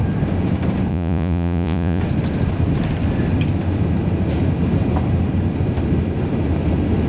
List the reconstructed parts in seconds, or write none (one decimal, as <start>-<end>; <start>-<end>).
0.9-2.0